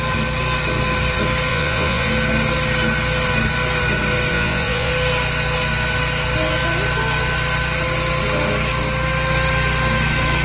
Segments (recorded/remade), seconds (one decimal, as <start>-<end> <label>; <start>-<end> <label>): 0.0-1.5 recorded; 1.5-2.1 remade; 2.1-4.3 recorded; 4.3-4.9 remade; 4.9-10.4 recorded